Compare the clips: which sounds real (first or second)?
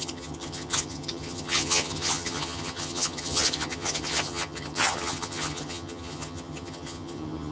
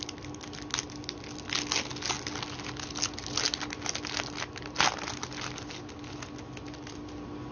second